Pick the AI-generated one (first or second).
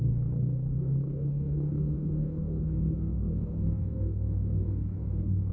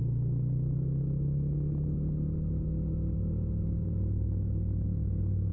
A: first